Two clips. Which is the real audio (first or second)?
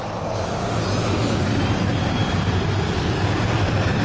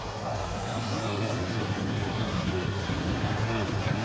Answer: first